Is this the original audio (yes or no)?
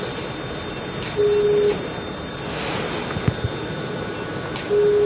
yes